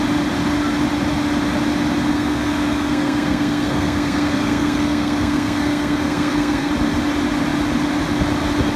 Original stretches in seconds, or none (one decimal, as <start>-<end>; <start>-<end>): 0.0-2.1; 6.7-8.8